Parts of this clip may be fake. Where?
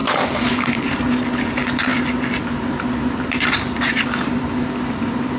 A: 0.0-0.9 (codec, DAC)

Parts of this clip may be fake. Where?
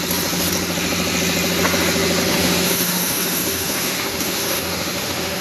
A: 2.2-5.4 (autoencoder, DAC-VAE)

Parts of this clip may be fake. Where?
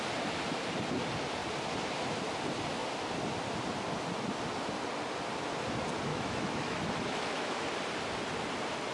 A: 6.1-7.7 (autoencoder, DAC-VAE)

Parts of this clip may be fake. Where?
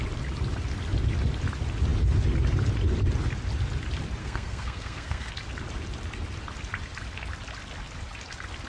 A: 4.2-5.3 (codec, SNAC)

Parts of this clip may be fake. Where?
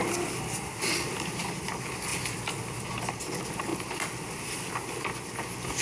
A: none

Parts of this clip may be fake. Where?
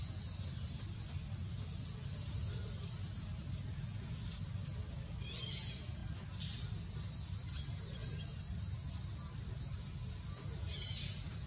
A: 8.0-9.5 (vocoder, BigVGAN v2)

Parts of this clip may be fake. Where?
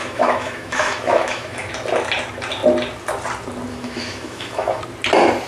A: 0.0-1.7 (autoencoder, DAC-VAE); 3.7-4.8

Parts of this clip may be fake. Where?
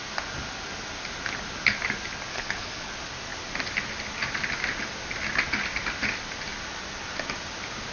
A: 2.3-2.9 (codec, HILCodec)